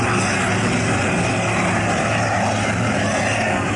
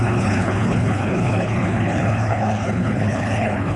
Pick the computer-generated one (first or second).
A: second